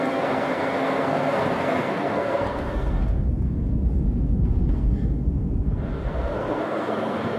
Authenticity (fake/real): fake